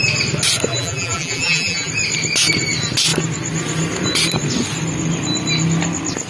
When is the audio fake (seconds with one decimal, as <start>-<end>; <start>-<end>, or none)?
0.7-1.9